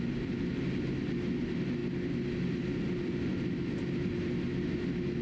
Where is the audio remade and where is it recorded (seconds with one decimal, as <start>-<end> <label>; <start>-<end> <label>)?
0.0-5.2 recorded